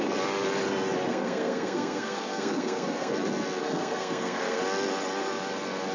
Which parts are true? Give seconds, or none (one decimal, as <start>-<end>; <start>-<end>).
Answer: 0.0-1.1; 3.1-3.6; 4.6-5.9